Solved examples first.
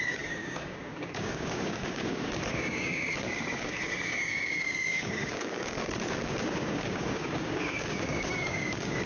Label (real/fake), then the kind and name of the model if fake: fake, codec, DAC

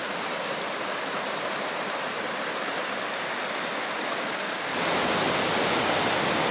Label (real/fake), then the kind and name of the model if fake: real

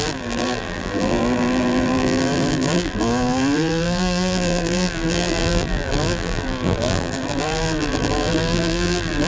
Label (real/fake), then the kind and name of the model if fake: fake, vocoder, BigVGAN v2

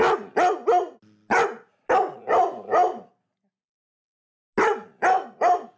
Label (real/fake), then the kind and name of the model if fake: real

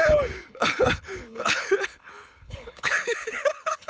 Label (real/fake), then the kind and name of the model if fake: fake, codec, HILCodec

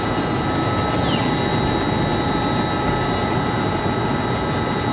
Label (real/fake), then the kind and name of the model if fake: real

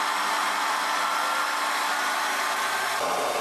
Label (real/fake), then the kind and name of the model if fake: real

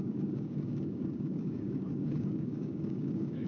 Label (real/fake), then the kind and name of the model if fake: fake, codec, DAC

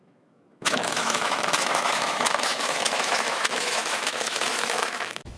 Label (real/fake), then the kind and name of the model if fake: fake, autoencoder, DAC-VAE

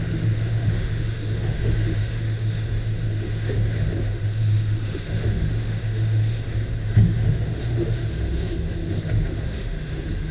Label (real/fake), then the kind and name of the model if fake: fake, autoencoder, DAC-VAE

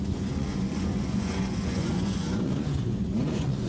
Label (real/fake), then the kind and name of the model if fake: fake, vocoder, Vocos